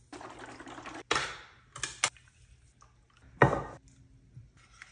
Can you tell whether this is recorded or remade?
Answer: recorded